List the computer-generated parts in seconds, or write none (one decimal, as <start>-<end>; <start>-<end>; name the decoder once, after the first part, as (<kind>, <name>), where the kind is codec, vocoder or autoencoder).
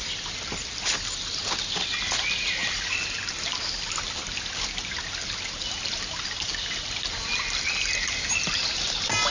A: none